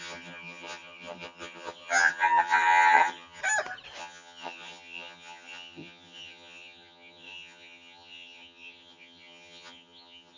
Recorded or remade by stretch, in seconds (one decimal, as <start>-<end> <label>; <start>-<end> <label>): 0.0-3.4 remade; 3.4-4.0 recorded; 4.0-10.4 remade

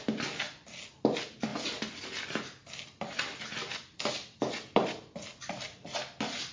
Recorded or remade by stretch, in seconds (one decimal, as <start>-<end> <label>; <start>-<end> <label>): 0.0-6.5 recorded

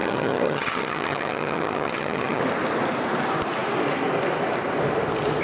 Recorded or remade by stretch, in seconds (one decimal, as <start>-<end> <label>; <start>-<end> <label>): 0.0-2.4 remade; 2.4-5.4 recorded